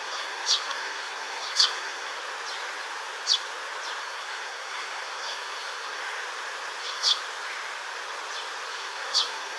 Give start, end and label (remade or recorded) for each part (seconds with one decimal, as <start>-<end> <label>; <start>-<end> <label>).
0.0-2.2 remade; 2.2-4.0 recorded; 4.0-6.0 remade; 6.0-6.8 recorded; 6.8-7.2 remade; 7.2-8.7 recorded; 8.7-9.6 remade